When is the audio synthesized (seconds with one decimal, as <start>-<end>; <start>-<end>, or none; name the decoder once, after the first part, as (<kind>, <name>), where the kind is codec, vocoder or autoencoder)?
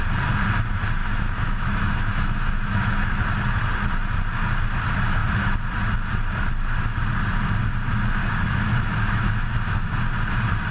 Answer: 1.0-3.2 (autoencoder, DAC-VAE); 8.2-9.5